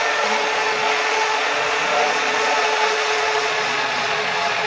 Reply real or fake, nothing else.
fake